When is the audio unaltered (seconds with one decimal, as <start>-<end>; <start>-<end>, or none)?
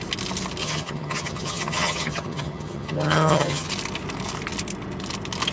0.0-0.6; 3.7-5.5